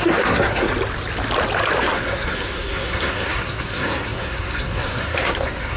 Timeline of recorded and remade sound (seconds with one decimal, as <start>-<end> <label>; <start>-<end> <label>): 0.0-0.7 remade; 0.7-1.8 recorded; 1.8-5.8 remade